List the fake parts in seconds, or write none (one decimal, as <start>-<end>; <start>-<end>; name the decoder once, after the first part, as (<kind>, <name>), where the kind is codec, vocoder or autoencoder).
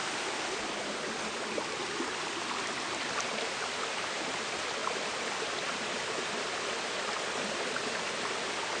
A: none